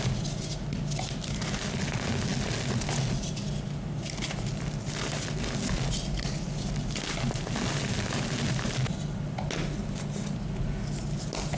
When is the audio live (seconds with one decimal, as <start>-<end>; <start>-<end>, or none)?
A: 0.0-11.6